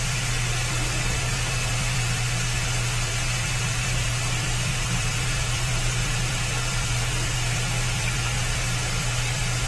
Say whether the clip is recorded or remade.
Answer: remade